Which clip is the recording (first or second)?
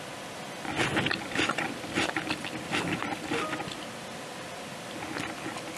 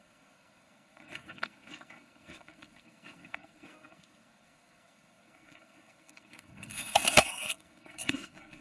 first